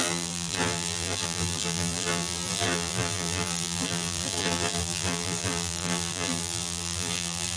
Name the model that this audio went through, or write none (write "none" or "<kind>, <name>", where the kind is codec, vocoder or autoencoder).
vocoder, BigVGAN v2